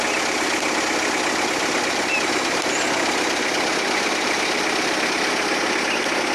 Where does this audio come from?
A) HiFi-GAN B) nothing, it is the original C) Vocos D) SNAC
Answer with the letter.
B